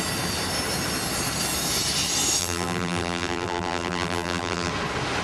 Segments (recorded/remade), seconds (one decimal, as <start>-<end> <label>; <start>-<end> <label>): 0.0-2.4 recorded; 2.4-4.7 remade; 4.7-5.2 recorded